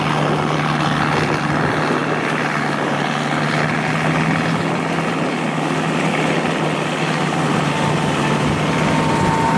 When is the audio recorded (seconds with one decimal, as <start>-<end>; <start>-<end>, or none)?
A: 0.0-9.6